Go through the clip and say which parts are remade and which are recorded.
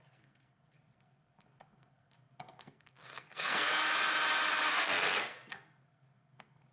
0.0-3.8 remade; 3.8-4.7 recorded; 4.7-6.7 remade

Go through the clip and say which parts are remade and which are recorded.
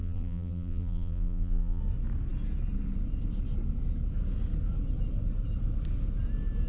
0.0-1.8 remade; 1.8-6.7 recorded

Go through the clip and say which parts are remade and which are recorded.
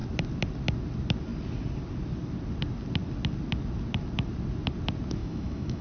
0.0-5.2 recorded; 5.2-5.8 remade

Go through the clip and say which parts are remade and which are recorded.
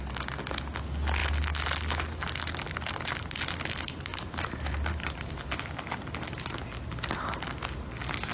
0.0-4.1 recorded; 4.1-5.3 remade; 5.3-8.3 recorded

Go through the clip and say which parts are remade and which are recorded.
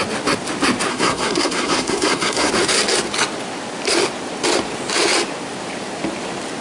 0.0-0.9 recorded; 0.9-2.5 remade; 2.5-6.6 recorded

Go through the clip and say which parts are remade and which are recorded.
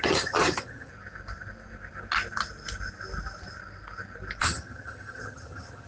0.0-0.9 remade; 0.9-4.4 recorded; 4.4-5.9 remade